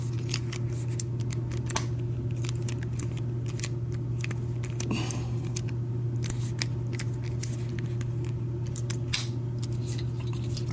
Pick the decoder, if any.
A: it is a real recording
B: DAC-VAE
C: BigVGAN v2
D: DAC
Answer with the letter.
A